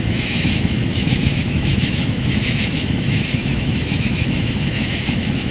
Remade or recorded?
remade